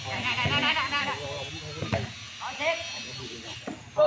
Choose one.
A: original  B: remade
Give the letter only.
A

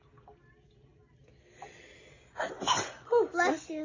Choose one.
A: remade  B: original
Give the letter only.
B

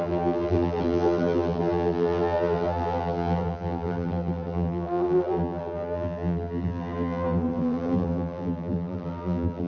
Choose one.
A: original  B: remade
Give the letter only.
B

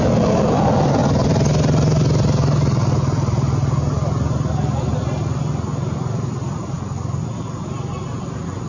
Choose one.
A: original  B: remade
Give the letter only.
A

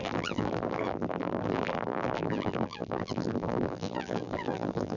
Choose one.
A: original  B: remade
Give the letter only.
B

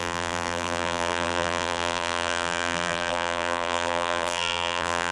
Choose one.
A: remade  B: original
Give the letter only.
A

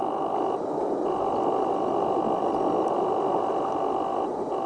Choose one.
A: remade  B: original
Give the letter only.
B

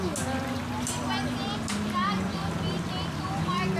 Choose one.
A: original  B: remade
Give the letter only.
A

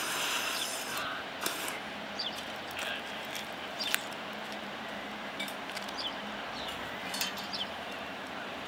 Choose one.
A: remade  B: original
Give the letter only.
A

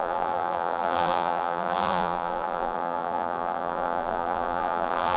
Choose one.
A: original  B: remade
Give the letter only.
B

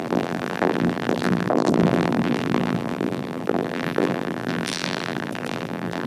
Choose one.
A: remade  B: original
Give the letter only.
A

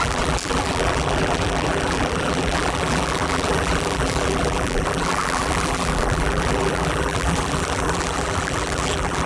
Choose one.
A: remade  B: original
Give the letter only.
A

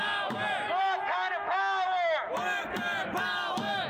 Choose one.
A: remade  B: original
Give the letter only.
B